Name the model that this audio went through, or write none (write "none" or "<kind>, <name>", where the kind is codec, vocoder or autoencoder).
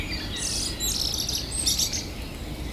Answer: none